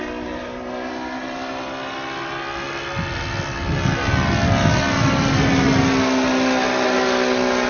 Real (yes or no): yes